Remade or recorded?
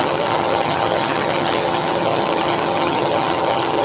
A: remade